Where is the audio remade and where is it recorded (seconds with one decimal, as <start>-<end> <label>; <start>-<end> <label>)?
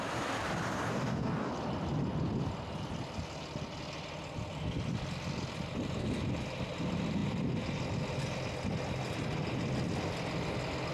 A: 0.0-0.9 recorded; 0.9-1.5 remade; 1.5-10.9 recorded